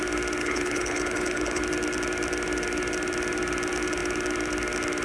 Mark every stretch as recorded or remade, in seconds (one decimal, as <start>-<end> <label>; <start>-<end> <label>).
0.0-0.4 recorded; 0.4-1.6 remade; 1.6-5.0 recorded